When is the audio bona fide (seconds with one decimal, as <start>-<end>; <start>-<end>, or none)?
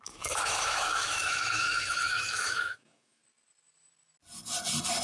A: 3.2-5.0